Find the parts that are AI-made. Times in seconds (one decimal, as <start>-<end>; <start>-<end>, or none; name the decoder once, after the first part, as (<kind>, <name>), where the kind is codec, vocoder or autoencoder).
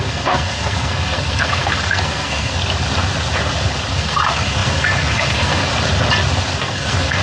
0.0-2.6 (codec, SNAC); 3.9-5.7; 6.6-7.2